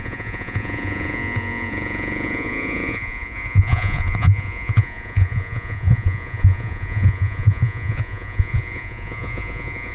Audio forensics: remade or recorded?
remade